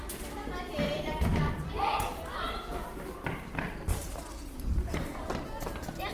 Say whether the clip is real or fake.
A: fake